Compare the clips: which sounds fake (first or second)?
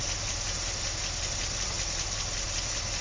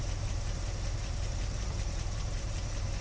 second